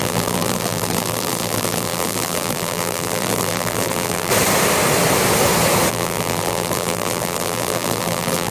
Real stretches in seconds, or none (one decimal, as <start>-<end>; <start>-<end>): 4.3-5.9